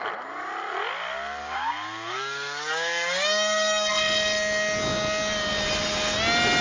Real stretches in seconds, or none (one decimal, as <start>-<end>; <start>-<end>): 0.0-1.4; 3.9-6.6